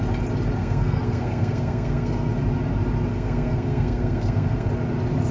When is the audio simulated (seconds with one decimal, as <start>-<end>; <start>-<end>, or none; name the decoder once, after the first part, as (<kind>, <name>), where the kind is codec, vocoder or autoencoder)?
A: 0.6-2.3 (codec, SNAC); 3.1-4.7